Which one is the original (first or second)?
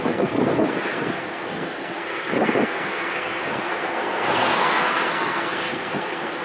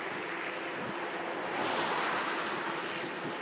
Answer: second